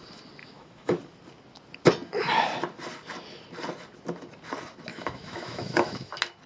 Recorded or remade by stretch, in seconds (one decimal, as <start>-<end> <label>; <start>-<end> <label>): 0.0-0.4 recorded; 0.4-1.0 remade; 1.0-4.9 recorded; 4.9-6.1 remade; 6.1-6.5 recorded